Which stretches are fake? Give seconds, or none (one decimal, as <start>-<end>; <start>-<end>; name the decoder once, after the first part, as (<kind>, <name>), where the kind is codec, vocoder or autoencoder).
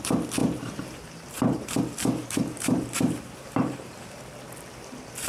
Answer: 0.4-1.8 (vocoder, BigVGAN v2); 2.2-4.2